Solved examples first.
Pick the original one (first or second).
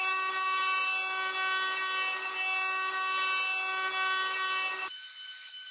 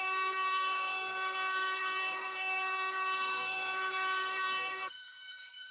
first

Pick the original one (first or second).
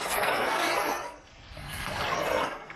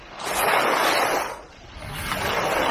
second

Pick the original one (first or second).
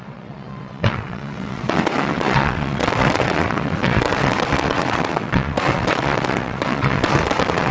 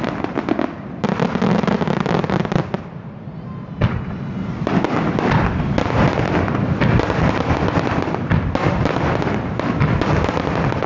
second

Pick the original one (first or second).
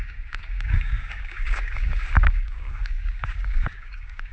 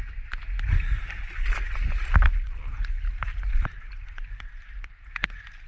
second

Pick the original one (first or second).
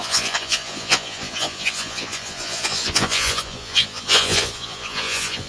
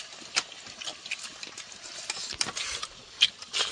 second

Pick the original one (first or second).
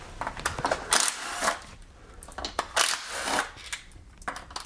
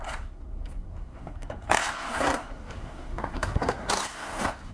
first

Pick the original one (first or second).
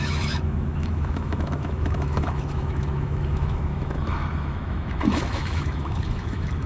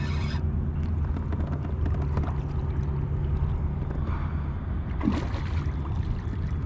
second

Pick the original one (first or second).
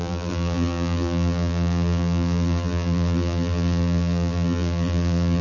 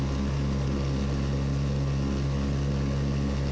second